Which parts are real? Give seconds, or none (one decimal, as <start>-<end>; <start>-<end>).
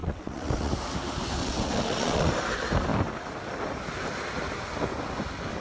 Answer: 0.7-1.4; 2.3-5.6